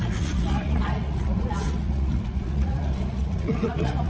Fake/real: fake